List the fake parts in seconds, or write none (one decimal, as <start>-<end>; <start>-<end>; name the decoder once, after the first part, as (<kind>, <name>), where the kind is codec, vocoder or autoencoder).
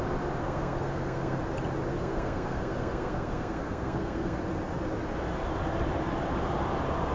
0.4-1.4 (codec, SNAC); 1.9-4.4